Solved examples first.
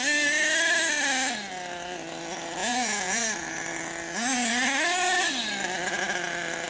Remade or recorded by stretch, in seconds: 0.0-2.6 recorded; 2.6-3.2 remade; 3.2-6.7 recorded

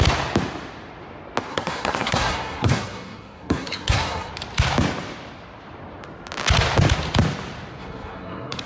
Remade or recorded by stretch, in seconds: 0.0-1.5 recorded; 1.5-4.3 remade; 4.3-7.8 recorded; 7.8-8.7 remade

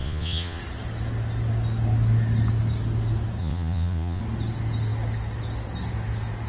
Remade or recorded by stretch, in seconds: 0.0-0.6 remade; 0.6-3.4 recorded; 3.4-4.2 remade; 4.2-6.5 recorded

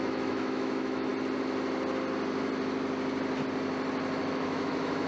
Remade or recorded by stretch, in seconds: 0.0-1.1 remade; 1.1-4.2 recorded; 4.2-5.1 remade

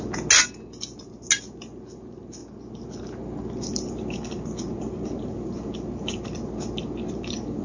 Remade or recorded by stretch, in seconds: 0.0-7.6 recorded

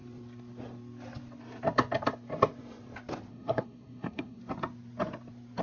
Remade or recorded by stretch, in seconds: 0.0-3.3 recorded; 3.3-4.4 remade; 4.4-5.6 recorded

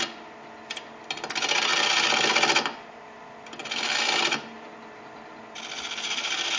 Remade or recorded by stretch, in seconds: 0.0-6.6 recorded

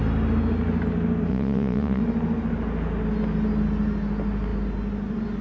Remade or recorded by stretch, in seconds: 0.0-1.3 recorded; 1.3-2.0 remade; 2.0-5.4 recorded